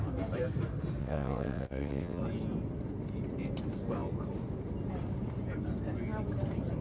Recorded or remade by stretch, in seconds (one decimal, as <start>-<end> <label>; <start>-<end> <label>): 0.0-1.0 recorded; 1.0-2.2 remade; 2.2-6.8 recorded